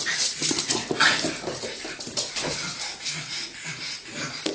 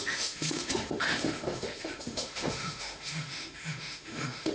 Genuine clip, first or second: first